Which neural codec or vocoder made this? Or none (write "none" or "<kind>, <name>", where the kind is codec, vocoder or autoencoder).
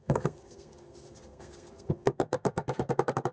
codec, SNAC